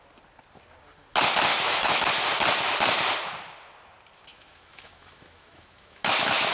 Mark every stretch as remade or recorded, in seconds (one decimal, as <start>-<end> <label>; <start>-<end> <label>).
0.0-1.5 recorded; 1.5-2.1 remade; 2.1-4.3 recorded; 4.3-6.5 remade